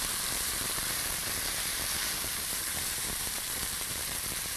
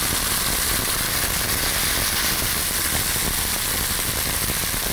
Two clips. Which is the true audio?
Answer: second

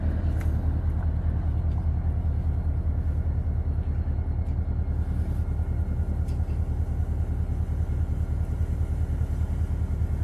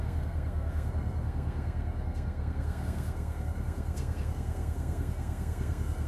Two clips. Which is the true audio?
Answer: first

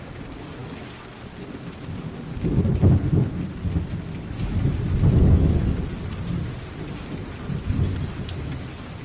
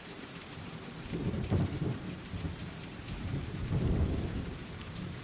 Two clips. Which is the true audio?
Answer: first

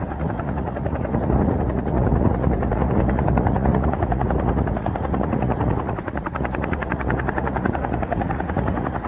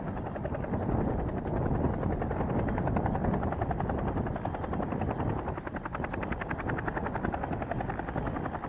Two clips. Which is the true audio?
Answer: second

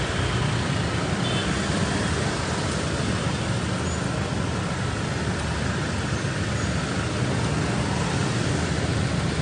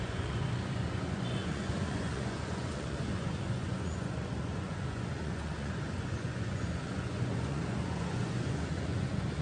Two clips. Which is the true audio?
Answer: first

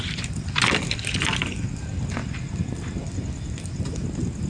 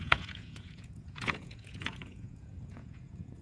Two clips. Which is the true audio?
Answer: first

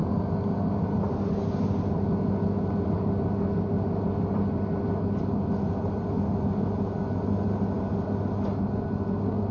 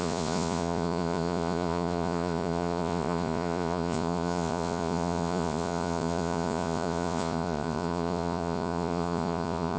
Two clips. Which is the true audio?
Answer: first